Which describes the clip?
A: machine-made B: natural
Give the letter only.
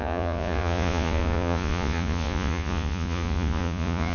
A